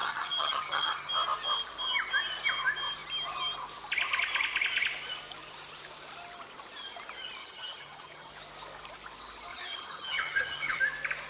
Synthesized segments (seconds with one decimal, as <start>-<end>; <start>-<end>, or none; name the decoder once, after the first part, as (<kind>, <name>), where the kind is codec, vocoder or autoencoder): 0.0-1.1 (vocoder, HiFi-GAN); 7.4-8.3; 9.5-10.8